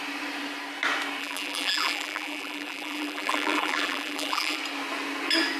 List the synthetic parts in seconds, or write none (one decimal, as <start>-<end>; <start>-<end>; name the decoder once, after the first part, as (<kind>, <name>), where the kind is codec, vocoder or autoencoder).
1.2-4.6 (vocoder, BigVGAN v2)